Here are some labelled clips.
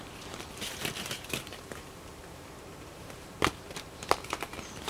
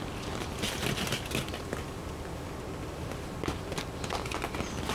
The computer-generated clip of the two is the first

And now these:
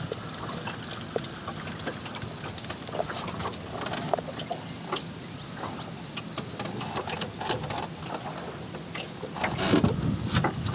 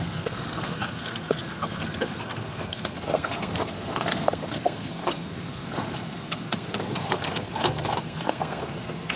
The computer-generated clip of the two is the second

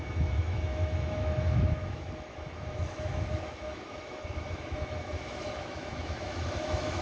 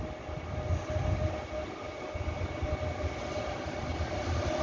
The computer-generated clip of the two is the first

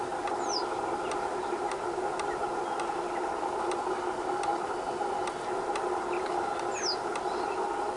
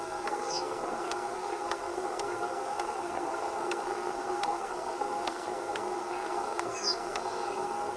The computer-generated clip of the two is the second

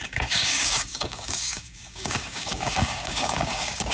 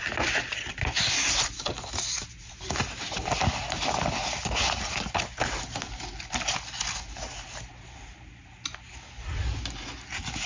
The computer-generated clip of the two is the first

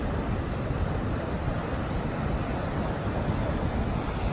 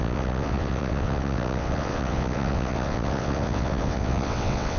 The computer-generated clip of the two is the second